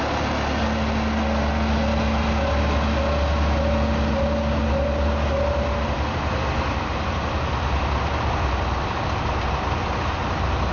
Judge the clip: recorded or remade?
recorded